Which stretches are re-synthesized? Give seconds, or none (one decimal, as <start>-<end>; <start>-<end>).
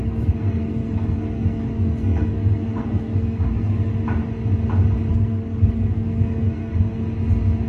0.0-3.9; 5.1-7.0